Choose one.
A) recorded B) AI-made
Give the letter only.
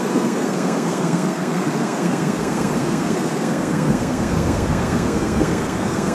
B